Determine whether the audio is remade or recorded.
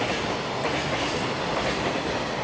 recorded